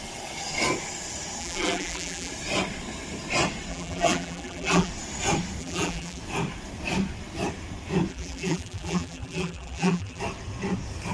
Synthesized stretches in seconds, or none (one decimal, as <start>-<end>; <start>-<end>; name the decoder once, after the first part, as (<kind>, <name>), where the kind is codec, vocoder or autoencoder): 1.4-2.3 (vocoder, BigVGAN v2); 3.7-4.9; 5.6-6.2; 8.1-10.2